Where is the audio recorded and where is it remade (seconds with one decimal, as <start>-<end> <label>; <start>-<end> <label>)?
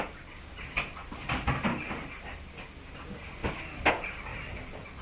0.0-5.0 recorded